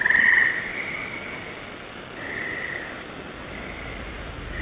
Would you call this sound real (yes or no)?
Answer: yes